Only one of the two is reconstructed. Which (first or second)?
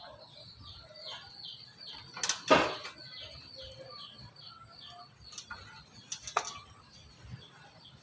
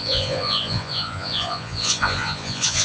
second